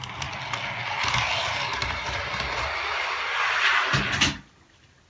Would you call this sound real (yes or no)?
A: yes